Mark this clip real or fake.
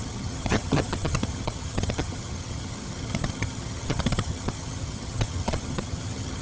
fake